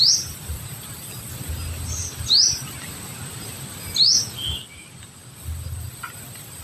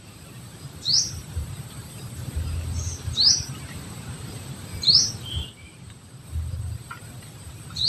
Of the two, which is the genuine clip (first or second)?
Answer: first